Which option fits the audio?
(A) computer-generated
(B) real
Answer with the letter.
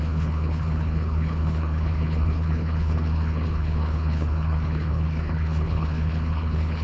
A